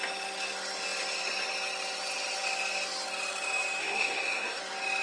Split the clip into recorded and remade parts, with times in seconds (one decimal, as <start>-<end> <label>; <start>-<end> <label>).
0.0-3.8 recorded; 3.8-4.6 remade; 4.6-5.0 recorded